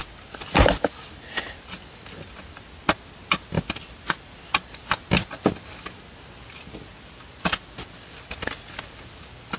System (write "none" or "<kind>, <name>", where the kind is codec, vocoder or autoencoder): none